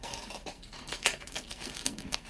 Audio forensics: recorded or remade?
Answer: remade